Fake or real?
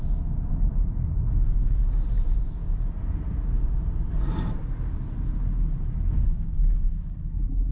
real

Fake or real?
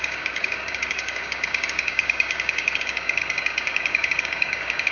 fake